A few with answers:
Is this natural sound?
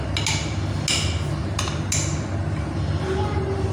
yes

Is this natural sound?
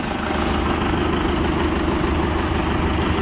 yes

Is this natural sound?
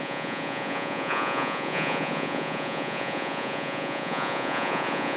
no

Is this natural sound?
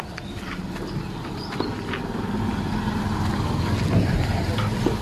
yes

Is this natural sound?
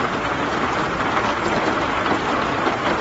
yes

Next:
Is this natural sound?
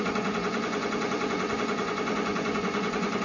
no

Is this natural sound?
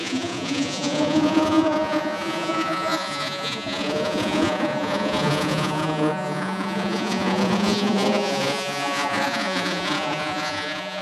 no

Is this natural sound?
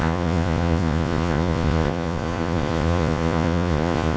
no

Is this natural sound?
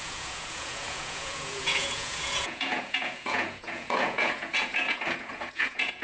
no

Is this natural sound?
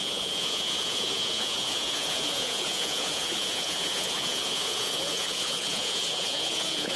no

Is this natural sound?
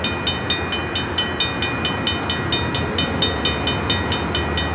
yes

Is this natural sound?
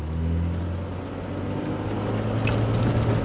yes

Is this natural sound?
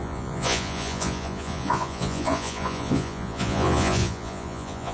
no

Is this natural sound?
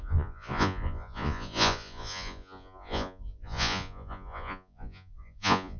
no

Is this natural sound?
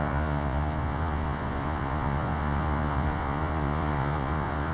no